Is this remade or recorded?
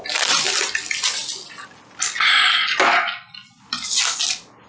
recorded